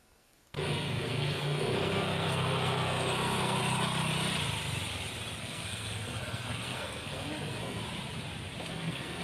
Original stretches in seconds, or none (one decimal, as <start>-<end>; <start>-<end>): 3.6-5.4; 7.8-8.7